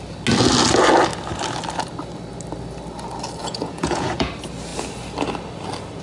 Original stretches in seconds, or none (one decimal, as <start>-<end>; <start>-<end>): 0.0-3.4; 4.3-6.0